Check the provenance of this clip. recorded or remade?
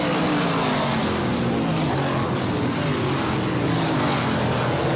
recorded